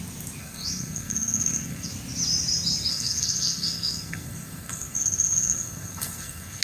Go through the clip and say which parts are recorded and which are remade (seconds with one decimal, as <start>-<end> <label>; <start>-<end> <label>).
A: 0.0-0.4 recorded; 0.4-1.9 remade; 1.9-2.9 recorded; 2.9-6.6 remade